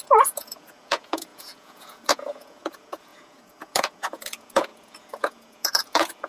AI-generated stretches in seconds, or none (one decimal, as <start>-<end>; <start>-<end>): 0.0-6.3